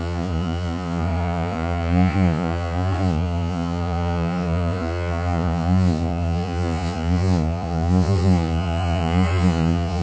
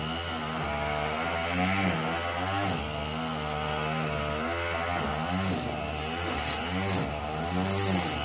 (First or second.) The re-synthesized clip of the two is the first